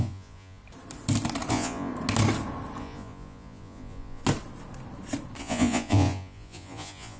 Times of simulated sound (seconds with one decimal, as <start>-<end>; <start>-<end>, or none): 0.0-0.6; 1.5-1.9; 2.8-4.2; 5.4-7.2